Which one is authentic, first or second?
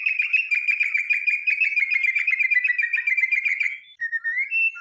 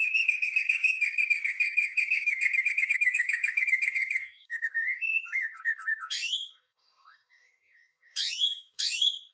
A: first